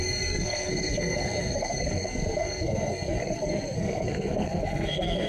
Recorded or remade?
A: remade